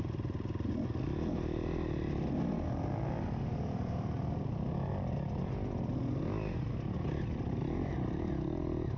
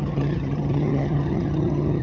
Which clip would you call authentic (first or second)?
first